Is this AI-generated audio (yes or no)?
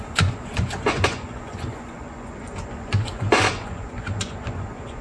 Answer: yes